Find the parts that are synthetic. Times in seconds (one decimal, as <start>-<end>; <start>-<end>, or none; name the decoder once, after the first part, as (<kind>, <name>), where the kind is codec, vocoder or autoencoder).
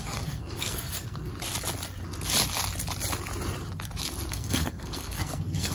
0.0-1.3 (codec, SNAC); 4.3-5.7